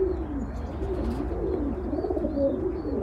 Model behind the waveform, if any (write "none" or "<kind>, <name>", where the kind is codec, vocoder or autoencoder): none